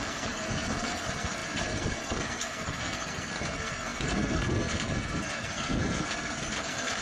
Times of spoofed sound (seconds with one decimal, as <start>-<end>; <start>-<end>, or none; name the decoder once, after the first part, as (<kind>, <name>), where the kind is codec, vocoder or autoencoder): 0.0-7.0 (codec, SNAC)